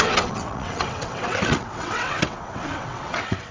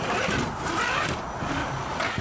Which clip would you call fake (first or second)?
first